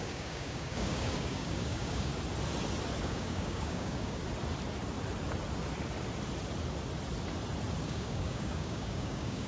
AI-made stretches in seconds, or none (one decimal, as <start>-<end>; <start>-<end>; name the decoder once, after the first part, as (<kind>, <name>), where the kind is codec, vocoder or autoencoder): 0.0-2.1 (codec, DAC); 3.0-4.2; 7.8-9.5